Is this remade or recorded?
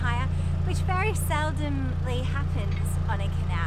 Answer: recorded